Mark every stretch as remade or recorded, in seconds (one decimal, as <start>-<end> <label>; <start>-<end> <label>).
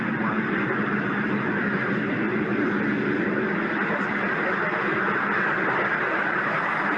0.0-7.0 recorded